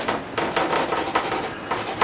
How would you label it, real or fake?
real